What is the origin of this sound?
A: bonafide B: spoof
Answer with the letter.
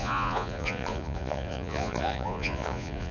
B